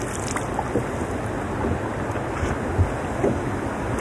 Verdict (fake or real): real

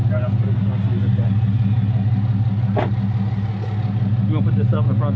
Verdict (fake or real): real